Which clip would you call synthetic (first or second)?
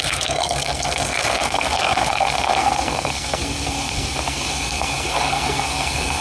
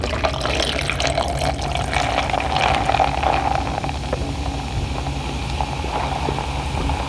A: first